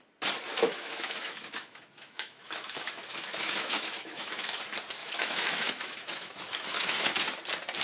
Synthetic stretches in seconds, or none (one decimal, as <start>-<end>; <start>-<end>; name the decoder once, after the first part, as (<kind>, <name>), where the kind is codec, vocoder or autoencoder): 0.5-4.6 (autoencoder, DAC-VAE); 5.0-7.1